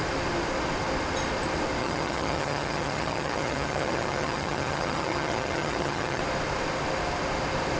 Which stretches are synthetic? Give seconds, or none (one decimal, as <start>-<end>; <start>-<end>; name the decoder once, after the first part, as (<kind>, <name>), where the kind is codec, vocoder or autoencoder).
1.8-6.2 (vocoder, HiFi-GAN)

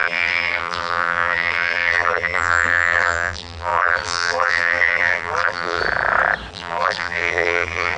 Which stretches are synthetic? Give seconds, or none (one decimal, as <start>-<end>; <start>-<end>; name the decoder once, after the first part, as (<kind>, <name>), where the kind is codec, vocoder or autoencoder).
0.0-5.8 (vocoder, BigVGAN v2); 6.5-8.0

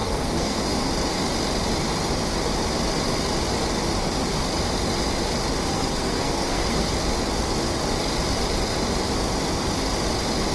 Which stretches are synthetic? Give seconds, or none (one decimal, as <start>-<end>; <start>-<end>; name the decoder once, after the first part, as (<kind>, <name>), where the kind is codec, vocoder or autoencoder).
0.0-0.9 (codec, SNAC); 5.6-6.9

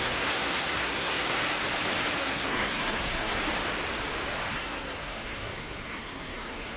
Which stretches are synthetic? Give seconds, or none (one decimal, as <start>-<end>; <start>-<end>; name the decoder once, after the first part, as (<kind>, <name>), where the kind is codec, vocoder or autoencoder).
0.0-1.4 (codec, SNAC); 2.2-3.4; 4.5-6.8

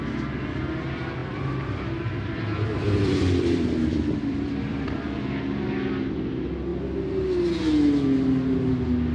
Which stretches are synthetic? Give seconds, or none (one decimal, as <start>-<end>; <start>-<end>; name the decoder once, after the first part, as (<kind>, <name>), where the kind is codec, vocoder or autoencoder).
1.2-5.3 (vocoder, BigVGAN v2)

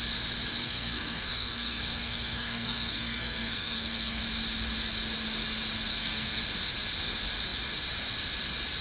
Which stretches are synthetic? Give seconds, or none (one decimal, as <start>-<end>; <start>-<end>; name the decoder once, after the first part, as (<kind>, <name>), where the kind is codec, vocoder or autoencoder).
0.6-4.2 (codec, SNAC); 5.9-6.4